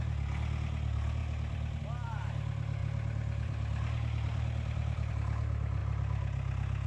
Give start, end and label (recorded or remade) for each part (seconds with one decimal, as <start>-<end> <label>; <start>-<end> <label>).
0.0-1.2 recorded; 1.2-1.8 remade; 1.8-2.8 recorded; 2.8-5.1 remade; 5.1-6.9 recorded